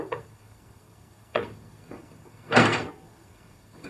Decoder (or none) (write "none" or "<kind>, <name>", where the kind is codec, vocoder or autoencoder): codec, SNAC